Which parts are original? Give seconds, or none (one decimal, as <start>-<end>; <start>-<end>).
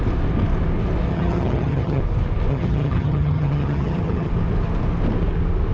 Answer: 0.0-1.1; 2.0-2.5; 4.3-5.7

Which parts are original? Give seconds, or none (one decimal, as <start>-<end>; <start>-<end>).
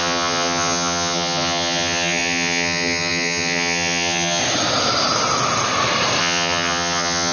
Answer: 4.4-6.2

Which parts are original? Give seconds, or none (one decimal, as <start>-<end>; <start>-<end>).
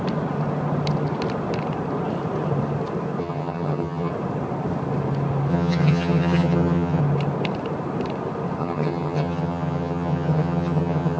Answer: 0.0-3.2; 4.1-5.5; 7.0-8.6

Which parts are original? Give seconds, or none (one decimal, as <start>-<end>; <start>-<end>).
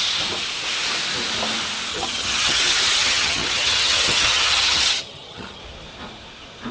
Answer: 0.0-1.9; 2.6-3.0; 5.6-6.7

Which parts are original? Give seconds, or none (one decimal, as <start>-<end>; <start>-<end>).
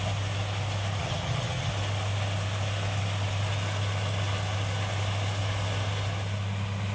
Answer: 0.0-1.0; 1.7-6.9